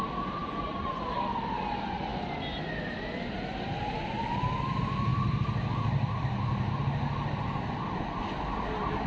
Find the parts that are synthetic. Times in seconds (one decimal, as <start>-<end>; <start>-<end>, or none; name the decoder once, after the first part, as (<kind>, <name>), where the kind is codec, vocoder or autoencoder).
0.4-1.0 (vocoder, Vocos)